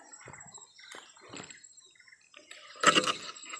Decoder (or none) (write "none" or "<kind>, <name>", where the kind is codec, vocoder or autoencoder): none